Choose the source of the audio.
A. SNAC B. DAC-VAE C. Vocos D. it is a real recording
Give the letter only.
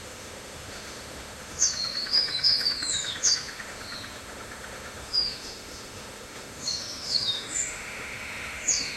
B